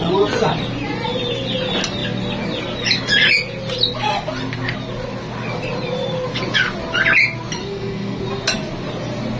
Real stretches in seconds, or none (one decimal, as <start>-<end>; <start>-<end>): 0.0-7.6; 8.2-9.4